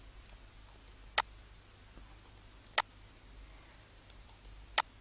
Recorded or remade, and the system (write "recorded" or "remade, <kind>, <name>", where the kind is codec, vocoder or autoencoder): recorded